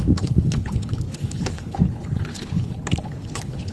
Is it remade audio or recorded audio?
remade